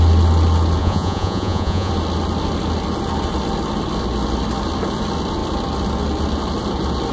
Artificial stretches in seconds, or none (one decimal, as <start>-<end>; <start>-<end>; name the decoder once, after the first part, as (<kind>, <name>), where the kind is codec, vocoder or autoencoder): 0.8-1.9 (vocoder, Vocos)